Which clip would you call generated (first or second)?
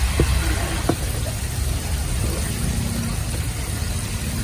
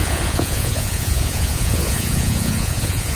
second